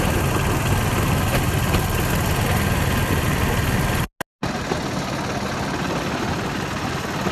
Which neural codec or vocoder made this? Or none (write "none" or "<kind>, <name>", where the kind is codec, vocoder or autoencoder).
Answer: none